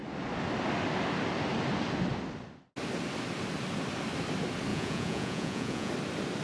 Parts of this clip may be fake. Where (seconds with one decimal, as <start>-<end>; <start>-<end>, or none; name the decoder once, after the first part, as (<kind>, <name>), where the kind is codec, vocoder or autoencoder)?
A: 4.7-5.9 (vocoder, Vocos)